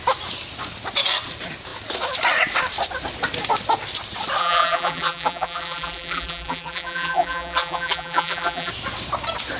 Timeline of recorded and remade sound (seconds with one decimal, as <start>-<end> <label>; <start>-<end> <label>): 0.0-4.4 recorded; 4.4-8.7 remade; 8.7-9.6 recorded